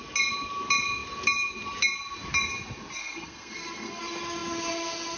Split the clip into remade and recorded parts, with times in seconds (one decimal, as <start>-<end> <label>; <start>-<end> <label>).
0.0-3.0 recorded; 3.0-4.0 remade; 4.0-5.2 recorded

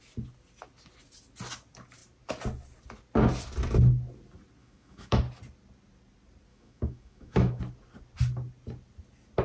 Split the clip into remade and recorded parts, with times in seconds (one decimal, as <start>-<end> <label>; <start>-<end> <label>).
0.0-4.6 recorded; 4.6-5.2 remade; 5.2-6.5 recorded; 6.5-7.6 remade; 7.6-9.4 recorded

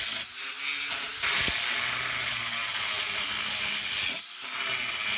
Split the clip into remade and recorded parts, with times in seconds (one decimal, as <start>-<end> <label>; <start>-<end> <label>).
0.0-5.2 recorded

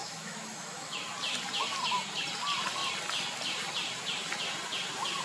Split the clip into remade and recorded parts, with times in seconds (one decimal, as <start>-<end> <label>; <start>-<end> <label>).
0.0-1.0 remade; 1.0-5.2 recorded

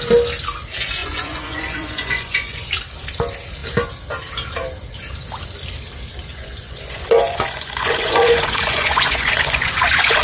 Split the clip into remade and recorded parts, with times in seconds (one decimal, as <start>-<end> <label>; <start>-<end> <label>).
0.0-1.0 recorded; 1.0-2.7 remade; 2.7-6.3 recorded; 6.3-10.2 remade

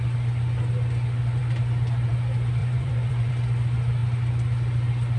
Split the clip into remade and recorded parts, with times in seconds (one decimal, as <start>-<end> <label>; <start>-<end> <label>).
0.0-2.6 recorded; 2.6-3.3 remade; 3.3-5.2 recorded

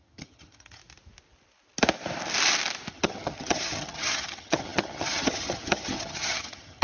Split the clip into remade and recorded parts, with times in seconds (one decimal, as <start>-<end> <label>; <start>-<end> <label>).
0.0-0.8 remade; 0.8-2.9 recorded; 2.9-6.8 remade